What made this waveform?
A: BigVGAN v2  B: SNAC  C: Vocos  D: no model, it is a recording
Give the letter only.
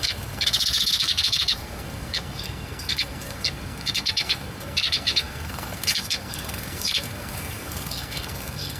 B